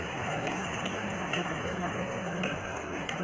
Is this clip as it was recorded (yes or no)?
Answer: no